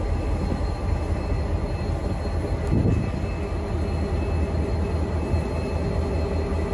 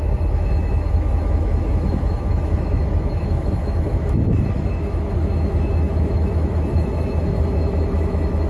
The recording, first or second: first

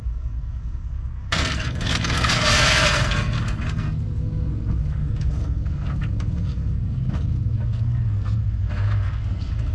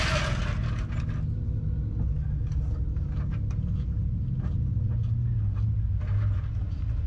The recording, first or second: second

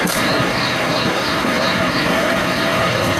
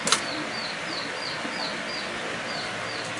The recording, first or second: second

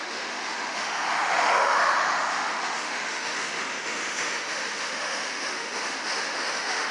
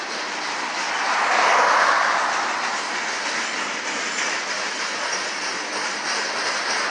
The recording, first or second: second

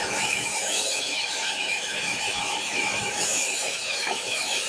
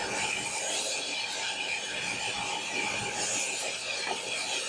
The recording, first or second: second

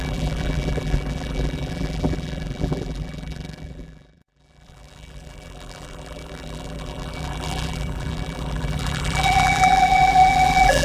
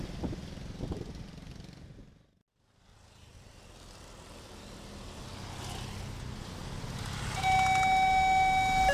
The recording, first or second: second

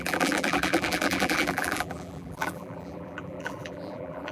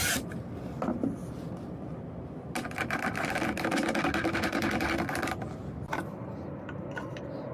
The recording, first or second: second